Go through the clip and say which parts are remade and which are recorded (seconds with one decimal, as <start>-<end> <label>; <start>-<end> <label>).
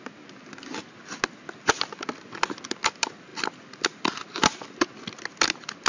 0.0-5.9 recorded